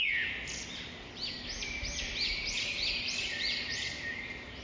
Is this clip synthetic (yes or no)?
yes